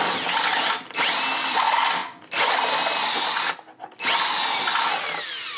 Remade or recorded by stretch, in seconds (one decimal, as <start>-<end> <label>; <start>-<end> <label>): 0.0-5.6 recorded